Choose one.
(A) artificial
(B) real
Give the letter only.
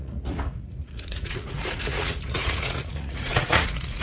A